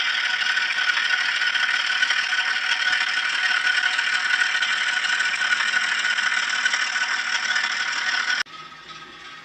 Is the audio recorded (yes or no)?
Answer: yes